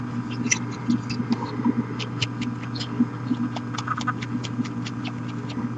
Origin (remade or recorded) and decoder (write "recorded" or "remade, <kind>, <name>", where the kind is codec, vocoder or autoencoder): recorded